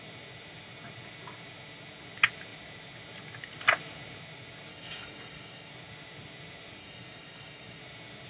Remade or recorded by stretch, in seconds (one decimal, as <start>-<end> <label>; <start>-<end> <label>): 0.0-4.7 recorded; 4.7-5.7 remade; 5.7-6.8 recorded; 6.8-7.8 remade; 7.8-8.3 recorded